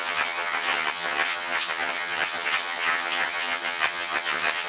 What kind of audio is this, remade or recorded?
remade